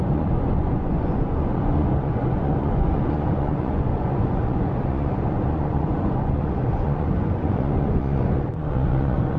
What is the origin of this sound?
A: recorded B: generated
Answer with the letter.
B